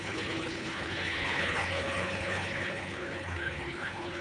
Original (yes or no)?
no